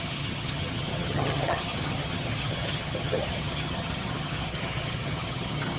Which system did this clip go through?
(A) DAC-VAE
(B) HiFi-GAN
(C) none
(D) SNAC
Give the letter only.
B